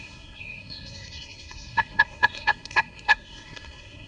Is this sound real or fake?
fake